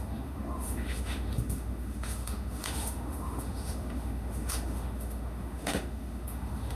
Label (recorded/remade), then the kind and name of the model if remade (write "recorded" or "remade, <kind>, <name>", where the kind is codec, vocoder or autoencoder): remade, autoencoder, DAC-VAE